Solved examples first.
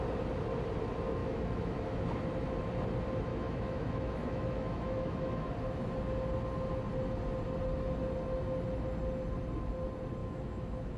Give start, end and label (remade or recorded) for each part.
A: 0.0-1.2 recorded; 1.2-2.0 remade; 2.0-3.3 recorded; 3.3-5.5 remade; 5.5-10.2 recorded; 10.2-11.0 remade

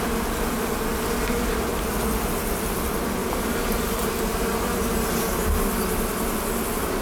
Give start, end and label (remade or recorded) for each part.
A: 0.0-3.2 recorded; 3.2-4.2 remade; 4.2-7.0 recorded

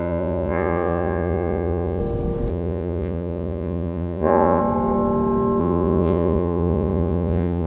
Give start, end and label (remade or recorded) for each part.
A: 0.0-2.0 remade; 2.0-2.5 recorded; 2.5-4.6 remade; 4.6-5.6 recorded; 5.6-7.7 remade